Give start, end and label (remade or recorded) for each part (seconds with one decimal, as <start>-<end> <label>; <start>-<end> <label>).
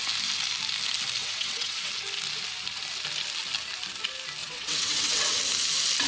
0.0-1.2 recorded; 1.2-1.9 remade; 1.9-4.4 recorded; 4.4-5.4 remade; 5.4-6.1 recorded